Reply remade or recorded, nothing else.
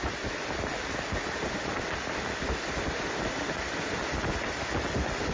recorded